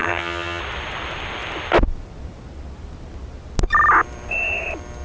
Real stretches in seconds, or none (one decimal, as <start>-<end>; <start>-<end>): 0.6-5.0

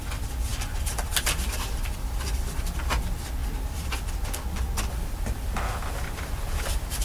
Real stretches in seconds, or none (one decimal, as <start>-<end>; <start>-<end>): 3.4-4.9

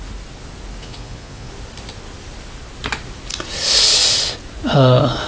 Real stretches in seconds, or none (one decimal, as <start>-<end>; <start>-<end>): 0.0-0.8; 1.5-5.3

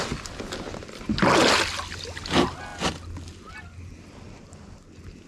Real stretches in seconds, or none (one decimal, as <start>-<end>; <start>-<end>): 0.0-5.3